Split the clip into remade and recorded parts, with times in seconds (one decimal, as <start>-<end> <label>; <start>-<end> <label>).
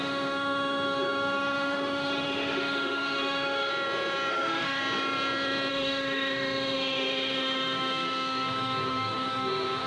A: 0.0-3.7 remade; 3.7-4.3 recorded; 4.3-4.8 remade; 4.8-5.7 recorded; 5.7-9.9 remade